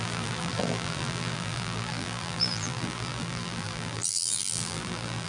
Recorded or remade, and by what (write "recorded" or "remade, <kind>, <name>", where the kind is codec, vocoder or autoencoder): remade, vocoder, BigVGAN v2